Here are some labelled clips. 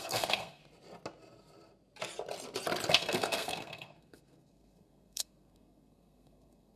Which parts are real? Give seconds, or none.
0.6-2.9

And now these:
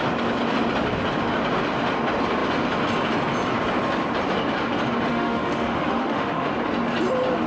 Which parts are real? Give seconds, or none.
0.0-5.1; 6.5-7.5

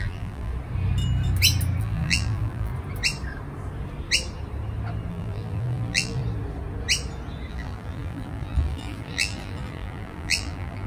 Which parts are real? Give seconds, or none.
0.5-1.8; 2.7-5.1; 6.2-7.5

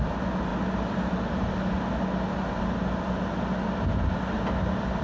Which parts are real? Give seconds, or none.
0.0-5.0

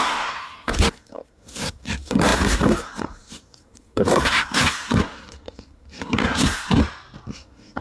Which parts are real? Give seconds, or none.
6.8-7.3

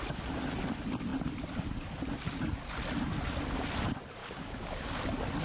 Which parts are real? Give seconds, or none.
0.0-4.2; 5.0-5.4

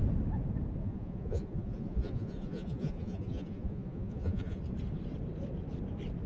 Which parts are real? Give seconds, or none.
0.0-0.8; 4.6-6.3